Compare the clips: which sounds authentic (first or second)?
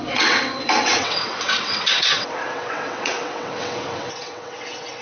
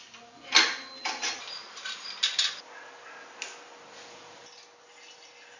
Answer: second